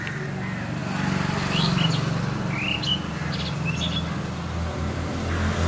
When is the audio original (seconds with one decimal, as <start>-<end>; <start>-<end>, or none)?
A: 0.0-5.7